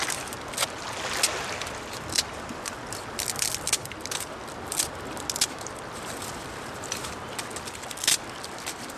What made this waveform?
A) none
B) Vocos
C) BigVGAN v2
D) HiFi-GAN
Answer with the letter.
A